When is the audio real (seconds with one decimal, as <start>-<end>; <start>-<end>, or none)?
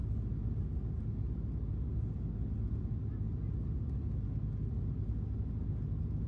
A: 0.0-6.3